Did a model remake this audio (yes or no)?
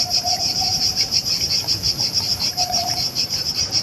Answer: yes